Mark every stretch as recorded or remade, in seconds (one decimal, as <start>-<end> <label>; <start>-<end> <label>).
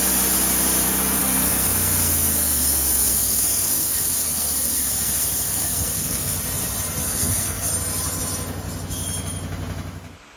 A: 0.0-1.2 recorded; 1.2-6.4 remade; 6.4-7.0 recorded; 7.0-7.7 remade; 7.7-10.4 recorded